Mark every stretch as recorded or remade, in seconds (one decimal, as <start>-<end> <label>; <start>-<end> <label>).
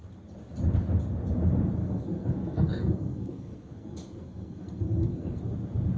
0.0-1.8 recorded; 1.8-5.4 remade; 5.4-6.0 recorded